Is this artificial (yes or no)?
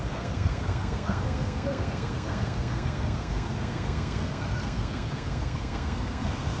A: yes